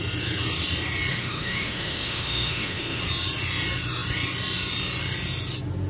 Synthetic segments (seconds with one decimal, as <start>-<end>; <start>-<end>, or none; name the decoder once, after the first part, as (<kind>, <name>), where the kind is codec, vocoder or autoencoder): 1.1-3.0 (autoencoder, DAC-VAE)